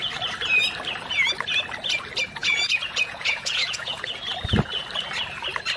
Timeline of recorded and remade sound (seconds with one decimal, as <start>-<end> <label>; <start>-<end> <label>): 0.0-2.4 recorded; 2.4-4.1 remade; 4.1-5.8 recorded